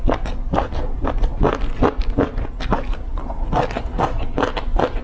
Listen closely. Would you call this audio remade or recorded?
recorded